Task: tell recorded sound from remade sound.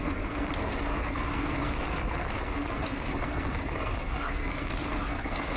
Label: remade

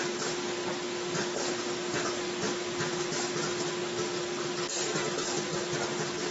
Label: recorded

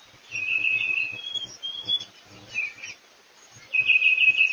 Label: recorded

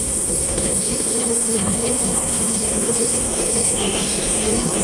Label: remade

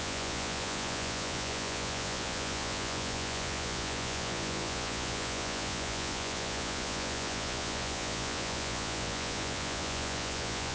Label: remade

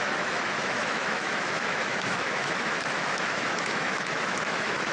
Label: remade